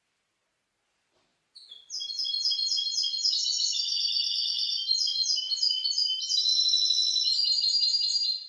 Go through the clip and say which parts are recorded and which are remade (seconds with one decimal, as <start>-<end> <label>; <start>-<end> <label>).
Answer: 0.0-3.9 recorded; 3.9-5.5 remade; 5.5-8.5 recorded